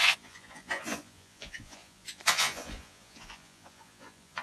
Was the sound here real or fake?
fake